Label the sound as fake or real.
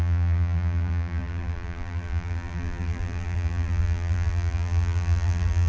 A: fake